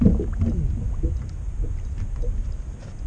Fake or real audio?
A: real